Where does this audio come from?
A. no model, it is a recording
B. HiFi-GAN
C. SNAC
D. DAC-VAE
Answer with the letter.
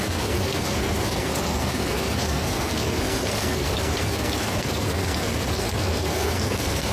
C